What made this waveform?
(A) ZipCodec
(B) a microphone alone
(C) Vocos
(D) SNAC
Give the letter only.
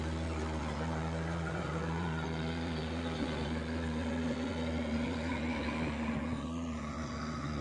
C